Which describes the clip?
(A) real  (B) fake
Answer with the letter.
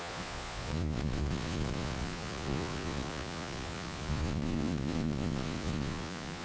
B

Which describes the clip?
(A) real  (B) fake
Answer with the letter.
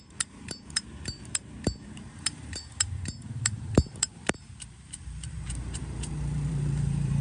B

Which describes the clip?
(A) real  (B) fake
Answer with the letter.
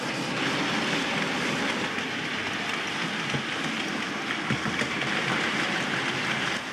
A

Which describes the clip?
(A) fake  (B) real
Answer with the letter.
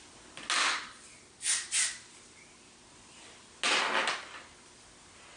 B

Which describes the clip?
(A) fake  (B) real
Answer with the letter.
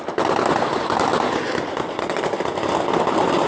B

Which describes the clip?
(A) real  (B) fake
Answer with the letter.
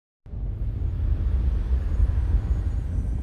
A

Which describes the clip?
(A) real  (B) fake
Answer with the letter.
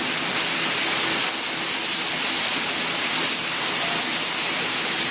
A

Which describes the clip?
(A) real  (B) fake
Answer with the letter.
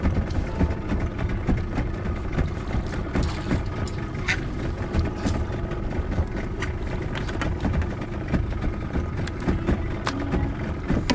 A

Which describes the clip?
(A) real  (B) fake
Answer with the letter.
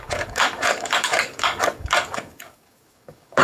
B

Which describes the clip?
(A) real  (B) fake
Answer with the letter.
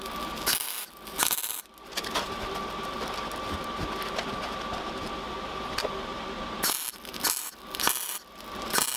A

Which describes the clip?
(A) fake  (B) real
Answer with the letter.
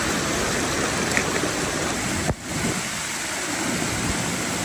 B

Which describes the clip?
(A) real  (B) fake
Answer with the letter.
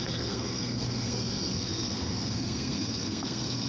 B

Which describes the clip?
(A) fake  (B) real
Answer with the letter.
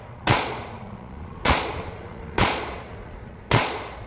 A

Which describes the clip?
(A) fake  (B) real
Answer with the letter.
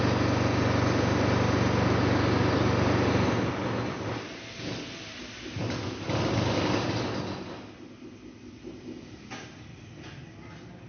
B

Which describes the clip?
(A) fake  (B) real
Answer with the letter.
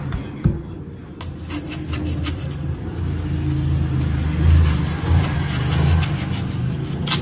B